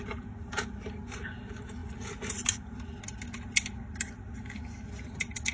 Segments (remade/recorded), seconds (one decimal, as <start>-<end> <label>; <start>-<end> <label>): 0.0-5.5 recorded